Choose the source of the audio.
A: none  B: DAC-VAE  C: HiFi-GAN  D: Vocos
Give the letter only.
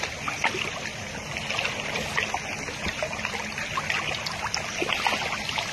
A